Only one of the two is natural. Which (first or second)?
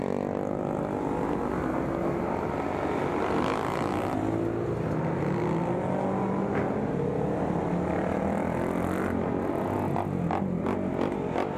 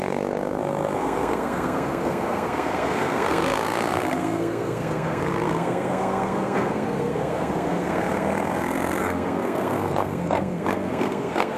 first